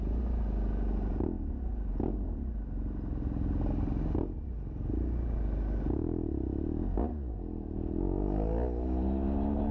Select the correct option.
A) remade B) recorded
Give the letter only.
B